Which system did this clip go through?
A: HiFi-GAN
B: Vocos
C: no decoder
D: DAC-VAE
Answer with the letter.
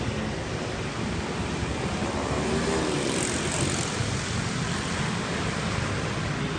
C